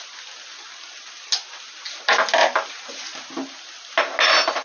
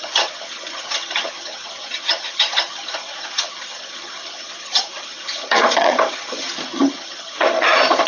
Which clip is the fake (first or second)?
second